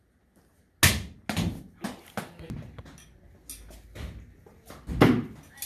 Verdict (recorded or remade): recorded